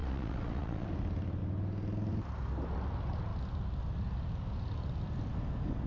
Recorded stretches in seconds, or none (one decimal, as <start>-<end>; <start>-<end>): 0.9-5.9